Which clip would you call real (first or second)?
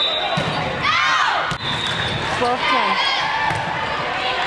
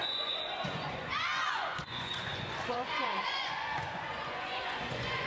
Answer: first